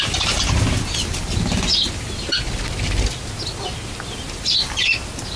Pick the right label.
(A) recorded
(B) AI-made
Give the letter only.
A